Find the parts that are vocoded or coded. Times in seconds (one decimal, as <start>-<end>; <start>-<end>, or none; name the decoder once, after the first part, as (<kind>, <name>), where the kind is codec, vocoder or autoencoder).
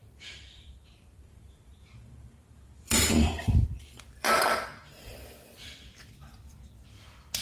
0.0-4.4 (vocoder, BigVGAN v2)